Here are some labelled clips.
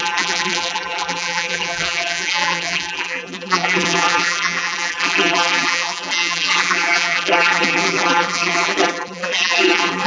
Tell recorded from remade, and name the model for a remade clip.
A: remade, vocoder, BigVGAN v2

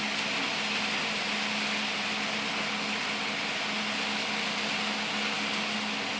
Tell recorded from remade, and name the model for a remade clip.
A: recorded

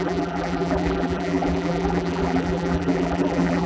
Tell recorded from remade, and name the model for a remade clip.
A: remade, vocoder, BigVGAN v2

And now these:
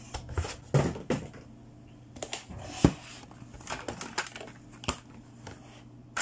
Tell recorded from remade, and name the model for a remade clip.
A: recorded